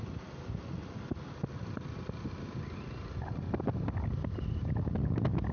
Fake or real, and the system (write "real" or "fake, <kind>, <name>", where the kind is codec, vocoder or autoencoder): real